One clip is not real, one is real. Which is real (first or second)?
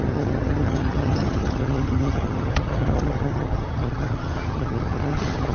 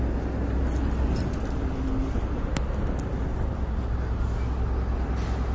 second